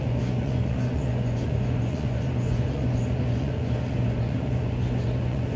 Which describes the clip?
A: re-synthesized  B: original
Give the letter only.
A